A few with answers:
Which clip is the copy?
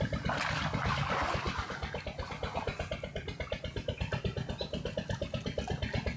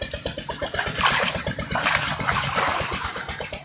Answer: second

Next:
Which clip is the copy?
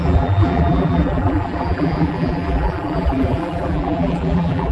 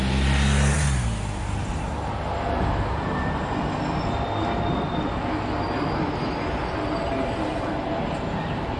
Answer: first